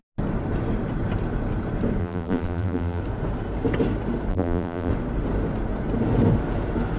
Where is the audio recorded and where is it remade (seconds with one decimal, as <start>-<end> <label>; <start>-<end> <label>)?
0.0-2.0 recorded; 2.0-3.0 remade; 3.0-4.3 recorded; 4.3-4.9 remade; 4.9-7.0 recorded